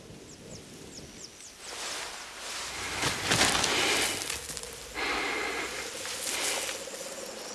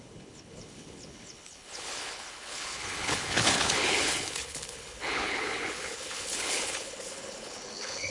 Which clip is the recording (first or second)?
first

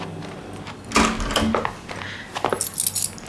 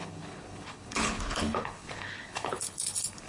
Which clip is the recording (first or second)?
first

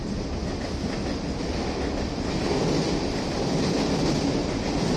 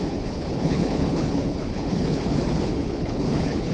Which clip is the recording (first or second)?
first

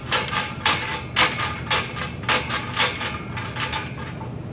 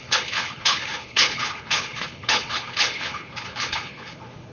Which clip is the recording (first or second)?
first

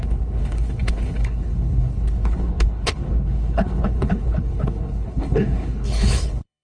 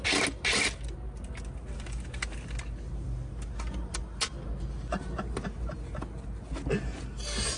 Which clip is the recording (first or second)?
second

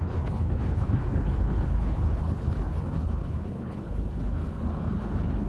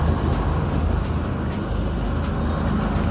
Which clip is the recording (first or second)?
second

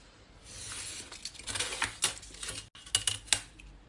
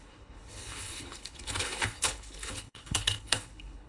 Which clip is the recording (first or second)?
first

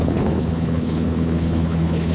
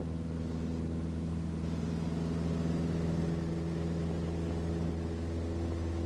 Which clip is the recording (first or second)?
second